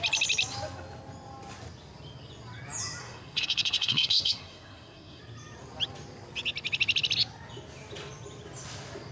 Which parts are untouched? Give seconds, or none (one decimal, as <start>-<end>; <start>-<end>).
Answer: 0.0-3.0; 5.2-9.1

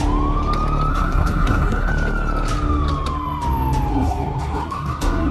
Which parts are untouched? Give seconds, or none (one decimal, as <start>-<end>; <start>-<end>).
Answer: 0.0-0.9; 1.9-3.9

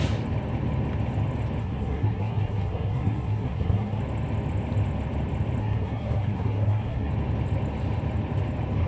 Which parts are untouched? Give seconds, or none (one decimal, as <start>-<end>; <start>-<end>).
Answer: 0.0-1.6; 4.0-5.6; 7.1-8.9

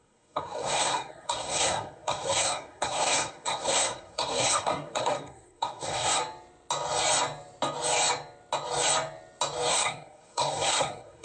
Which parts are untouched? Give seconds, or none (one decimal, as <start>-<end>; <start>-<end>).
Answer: 6.2-9.7